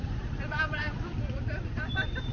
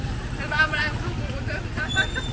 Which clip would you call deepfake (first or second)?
first